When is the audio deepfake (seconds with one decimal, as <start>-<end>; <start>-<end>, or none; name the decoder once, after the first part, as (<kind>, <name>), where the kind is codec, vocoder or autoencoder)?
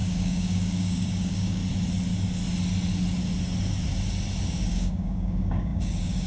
0.0-1.6 (codec, DAC); 4.7-6.3